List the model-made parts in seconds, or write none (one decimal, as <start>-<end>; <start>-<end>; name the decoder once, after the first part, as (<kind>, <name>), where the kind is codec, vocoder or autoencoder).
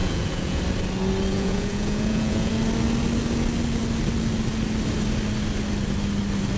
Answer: 0.0-0.6 (vocoder, Vocos); 1.3-2.5